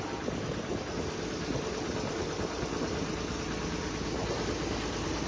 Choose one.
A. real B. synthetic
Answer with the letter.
A